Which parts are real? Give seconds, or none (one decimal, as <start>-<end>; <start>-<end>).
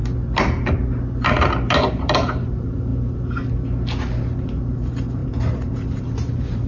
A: 0.0-1.9; 2.9-4.2